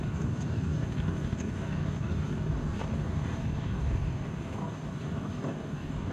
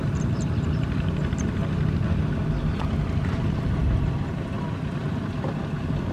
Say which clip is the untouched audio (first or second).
second